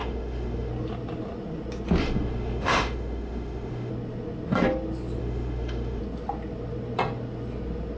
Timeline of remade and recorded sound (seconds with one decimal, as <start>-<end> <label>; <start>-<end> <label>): 0.0-0.7 remade; 0.7-2.0 recorded; 2.0-3.9 remade; 3.9-5.2 recorded; 5.2-6.0 remade; 6.0-8.0 recorded